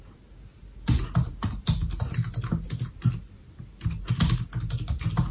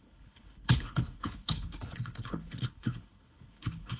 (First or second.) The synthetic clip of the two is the second